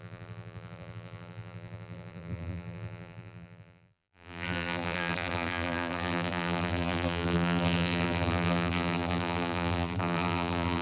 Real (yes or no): no